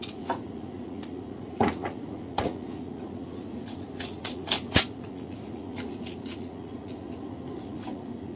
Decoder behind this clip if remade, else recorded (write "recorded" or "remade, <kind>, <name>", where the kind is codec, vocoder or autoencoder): remade, vocoder, Vocos